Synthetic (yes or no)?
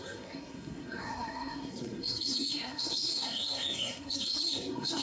yes